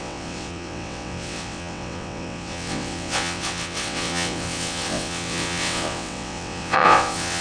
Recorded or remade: remade